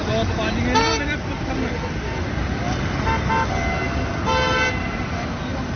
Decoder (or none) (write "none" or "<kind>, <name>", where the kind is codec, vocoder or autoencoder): none